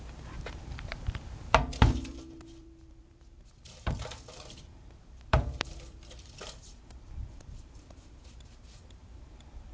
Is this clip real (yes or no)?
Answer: no